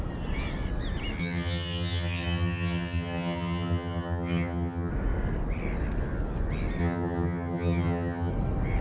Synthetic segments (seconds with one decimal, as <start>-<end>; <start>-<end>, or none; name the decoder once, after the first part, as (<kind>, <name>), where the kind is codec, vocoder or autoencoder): 1.2-4.9 (vocoder, HiFi-GAN); 6.8-8.3